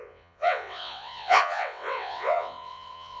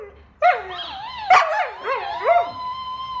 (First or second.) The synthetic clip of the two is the first